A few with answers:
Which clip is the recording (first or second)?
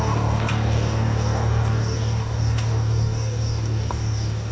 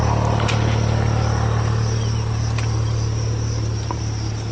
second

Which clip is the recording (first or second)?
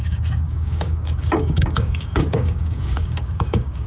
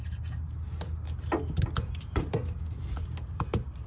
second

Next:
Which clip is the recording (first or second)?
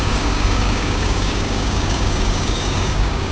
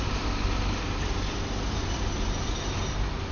second